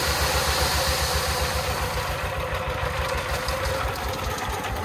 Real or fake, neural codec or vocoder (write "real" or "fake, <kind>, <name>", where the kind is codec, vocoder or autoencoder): real